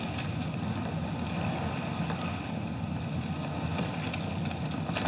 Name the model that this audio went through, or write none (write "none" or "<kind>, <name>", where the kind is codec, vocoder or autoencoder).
none